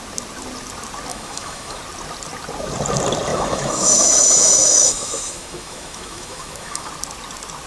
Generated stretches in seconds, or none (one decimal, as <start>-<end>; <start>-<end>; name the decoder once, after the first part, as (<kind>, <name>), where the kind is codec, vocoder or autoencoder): 1.1-1.8 (autoencoder, DAC-VAE); 3.3-6.9